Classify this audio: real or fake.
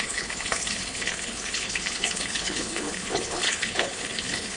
fake